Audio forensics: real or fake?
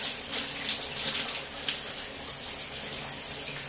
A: real